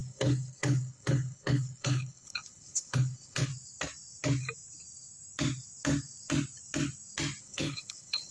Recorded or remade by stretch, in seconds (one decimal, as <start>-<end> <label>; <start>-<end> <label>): 0.0-3.5 remade; 3.5-7.4 recorded; 7.4-8.3 remade